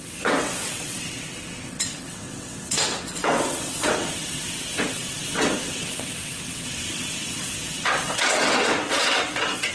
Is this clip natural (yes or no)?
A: no